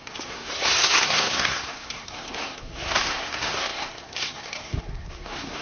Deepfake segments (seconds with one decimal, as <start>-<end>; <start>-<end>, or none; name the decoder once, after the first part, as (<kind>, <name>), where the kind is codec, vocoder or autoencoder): 0.0-5.6 (codec, SNAC)